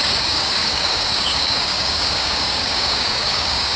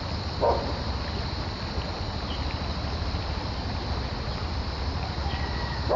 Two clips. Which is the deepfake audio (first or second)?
first